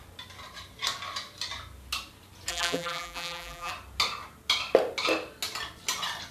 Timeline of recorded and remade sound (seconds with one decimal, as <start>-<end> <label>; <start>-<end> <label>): 0.0-2.5 recorded; 2.5-3.7 remade; 3.7-6.3 recorded